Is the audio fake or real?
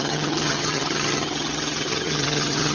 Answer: fake